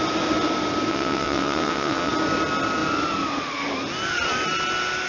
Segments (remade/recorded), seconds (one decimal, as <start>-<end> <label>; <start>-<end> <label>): 0.0-0.9 recorded; 0.9-2.1 remade; 2.1-5.1 recorded